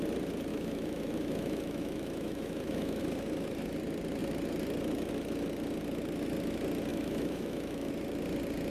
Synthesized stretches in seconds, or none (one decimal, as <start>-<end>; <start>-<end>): 0.5-3.0; 6.9-7.9

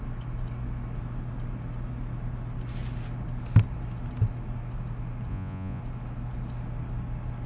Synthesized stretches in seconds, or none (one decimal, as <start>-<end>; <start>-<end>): 5.3-5.8

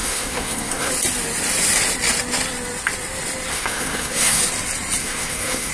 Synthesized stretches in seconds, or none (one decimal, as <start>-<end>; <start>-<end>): 0.0-0.9; 3.5-4.4; 5.0-5.7